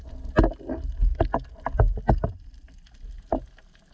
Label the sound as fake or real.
real